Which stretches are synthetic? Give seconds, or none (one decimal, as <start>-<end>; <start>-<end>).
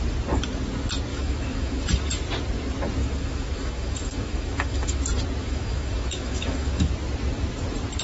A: 1.1-1.9; 3.0-5.0; 5.4-6.9